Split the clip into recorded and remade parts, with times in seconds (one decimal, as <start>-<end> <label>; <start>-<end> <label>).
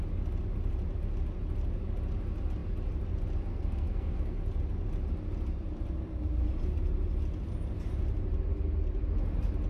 0.0-3.5 recorded; 3.5-4.4 remade; 4.4-9.7 recorded